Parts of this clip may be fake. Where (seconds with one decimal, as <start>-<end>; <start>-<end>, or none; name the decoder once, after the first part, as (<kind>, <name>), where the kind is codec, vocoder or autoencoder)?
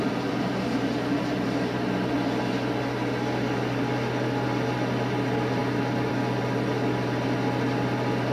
none